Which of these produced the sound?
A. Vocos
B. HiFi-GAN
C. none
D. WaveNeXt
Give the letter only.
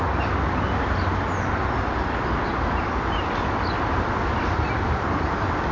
C